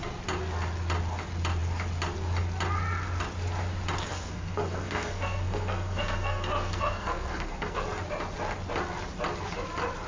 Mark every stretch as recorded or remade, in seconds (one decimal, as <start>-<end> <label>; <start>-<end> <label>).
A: 0.0-4.1 recorded; 4.1-7.8 remade; 7.8-10.1 recorded